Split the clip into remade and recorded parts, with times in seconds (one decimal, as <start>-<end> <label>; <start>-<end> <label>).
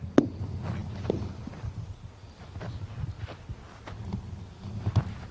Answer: 0.0-5.3 recorded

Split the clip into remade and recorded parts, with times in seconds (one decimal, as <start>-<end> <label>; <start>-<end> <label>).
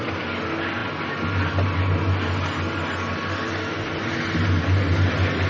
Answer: 0.0-5.5 recorded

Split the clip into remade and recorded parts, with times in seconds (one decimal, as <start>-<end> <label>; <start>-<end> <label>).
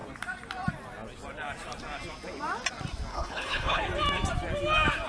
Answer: 0.0-3.1 recorded; 3.1-3.8 remade; 3.8-5.1 recorded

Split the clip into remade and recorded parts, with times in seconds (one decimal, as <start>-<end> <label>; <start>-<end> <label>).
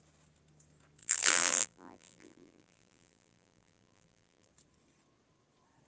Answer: 0.0-1.0 recorded; 1.0-4.5 remade; 4.5-5.9 recorded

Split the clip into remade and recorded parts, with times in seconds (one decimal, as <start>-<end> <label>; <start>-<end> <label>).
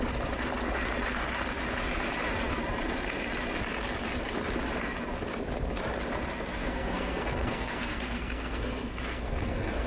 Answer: 0.0-6.6 recorded; 6.6-9.9 remade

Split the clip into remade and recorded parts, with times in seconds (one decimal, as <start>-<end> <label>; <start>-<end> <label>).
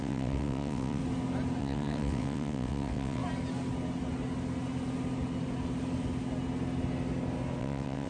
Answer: 0.0-1.0 remade; 1.0-1.6 recorded; 1.6-3.2 remade; 3.2-7.6 recorded; 7.6-8.1 remade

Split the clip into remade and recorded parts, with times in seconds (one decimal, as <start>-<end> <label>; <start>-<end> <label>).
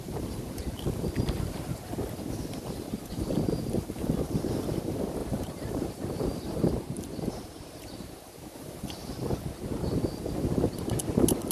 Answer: 0.0-5.2 recorded; 5.2-9.1 remade; 9.1-11.5 recorded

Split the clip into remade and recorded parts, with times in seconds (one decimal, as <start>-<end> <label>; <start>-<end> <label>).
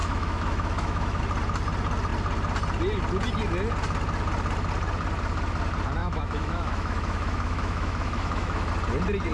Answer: 0.0-1.2 remade; 1.2-6.0 recorded; 6.0-8.7 remade; 8.7-9.3 recorded